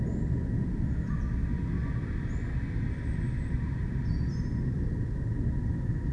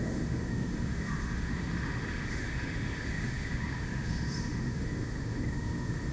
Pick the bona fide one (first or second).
first